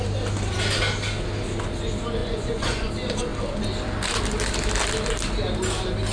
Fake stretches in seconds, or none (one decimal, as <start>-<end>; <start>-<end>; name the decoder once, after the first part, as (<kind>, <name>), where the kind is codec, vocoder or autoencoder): 2.2-2.9 (vocoder, Vocos)